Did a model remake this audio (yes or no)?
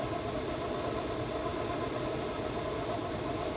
no